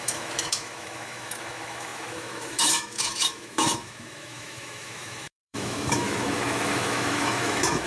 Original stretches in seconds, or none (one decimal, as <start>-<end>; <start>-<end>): none